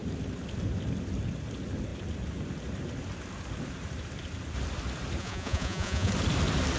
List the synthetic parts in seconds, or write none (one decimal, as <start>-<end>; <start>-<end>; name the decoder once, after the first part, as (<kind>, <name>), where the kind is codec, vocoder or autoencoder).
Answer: 5.2-6.1 (vocoder, Vocos)